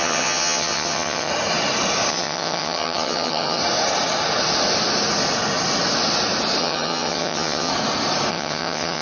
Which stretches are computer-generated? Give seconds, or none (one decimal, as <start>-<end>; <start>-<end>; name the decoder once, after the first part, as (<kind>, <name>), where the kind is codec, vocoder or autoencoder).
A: 0.0-1.3 (vocoder, HiFi-GAN); 2.1-3.6; 6.6-7.7; 8.3-9.0